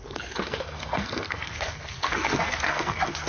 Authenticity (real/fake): fake